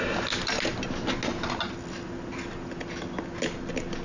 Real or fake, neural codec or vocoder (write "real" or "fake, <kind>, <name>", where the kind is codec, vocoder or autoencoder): real